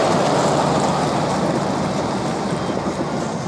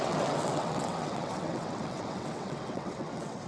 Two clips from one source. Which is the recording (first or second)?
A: first